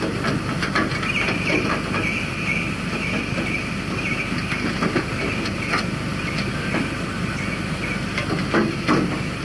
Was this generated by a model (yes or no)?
no